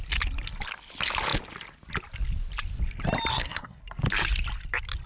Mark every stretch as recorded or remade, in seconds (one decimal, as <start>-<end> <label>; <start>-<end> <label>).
0.0-3.3 recorded; 3.3-3.8 remade; 3.8-5.1 recorded